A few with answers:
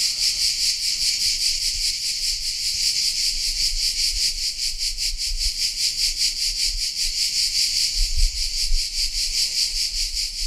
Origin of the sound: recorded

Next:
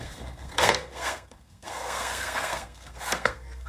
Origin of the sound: remade